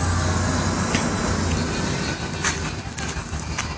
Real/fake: real